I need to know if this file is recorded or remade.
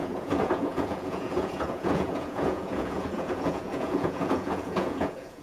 remade